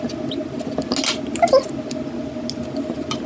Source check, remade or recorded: recorded